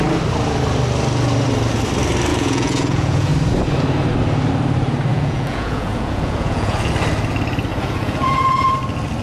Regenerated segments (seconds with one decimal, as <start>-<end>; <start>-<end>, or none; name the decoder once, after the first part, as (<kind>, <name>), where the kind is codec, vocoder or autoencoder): 2.3-3.3 (vocoder, Vocos); 5.1-6.9; 7.7-8.7